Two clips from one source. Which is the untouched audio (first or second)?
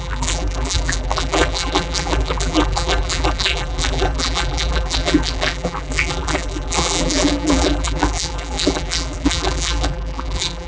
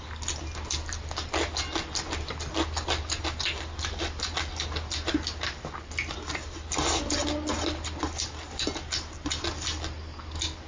second